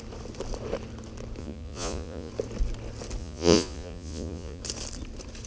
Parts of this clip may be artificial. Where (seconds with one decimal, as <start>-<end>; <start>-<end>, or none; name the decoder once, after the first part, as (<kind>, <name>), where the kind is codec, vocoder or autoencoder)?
1.4-2.3 (vocoder, Vocos); 3.2-4.6